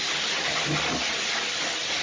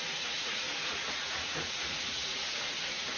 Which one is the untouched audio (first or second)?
first